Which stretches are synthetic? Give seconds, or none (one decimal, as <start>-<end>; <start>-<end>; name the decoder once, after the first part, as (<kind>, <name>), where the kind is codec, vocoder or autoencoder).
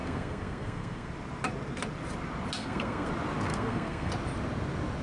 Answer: 0.0-1.1 (codec, SNAC); 2.6-3.1; 3.5-4.1